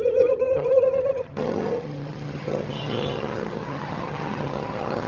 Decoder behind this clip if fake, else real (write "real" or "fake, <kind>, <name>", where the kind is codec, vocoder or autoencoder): fake, vocoder, HiFi-GAN